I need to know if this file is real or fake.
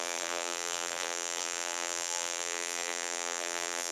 fake